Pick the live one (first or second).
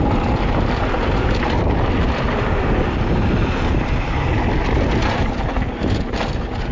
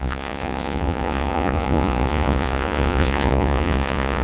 first